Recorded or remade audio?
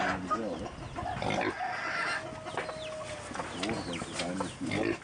recorded